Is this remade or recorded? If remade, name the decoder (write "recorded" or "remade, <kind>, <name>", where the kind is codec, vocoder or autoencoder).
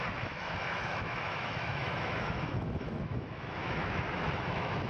remade, autoencoder, DAC-VAE